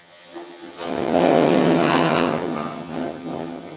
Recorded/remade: remade